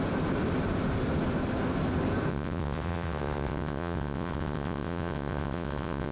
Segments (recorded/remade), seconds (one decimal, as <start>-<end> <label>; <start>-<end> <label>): 0.0-2.3 recorded; 2.3-6.1 remade